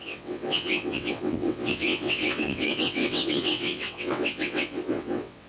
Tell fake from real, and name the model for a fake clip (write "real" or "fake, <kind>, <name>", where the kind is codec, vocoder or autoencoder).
fake, vocoder, WaveNeXt